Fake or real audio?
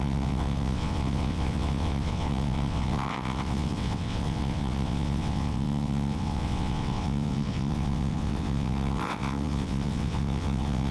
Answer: fake